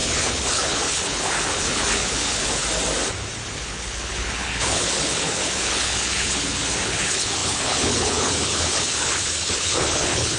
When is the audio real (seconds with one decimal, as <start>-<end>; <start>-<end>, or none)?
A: 2.6-3.5